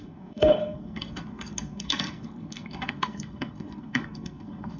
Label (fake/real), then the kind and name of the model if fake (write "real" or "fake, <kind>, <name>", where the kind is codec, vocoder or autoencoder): fake, codec, SNAC